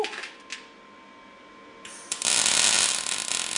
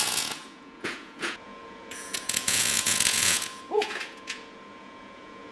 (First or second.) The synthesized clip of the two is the second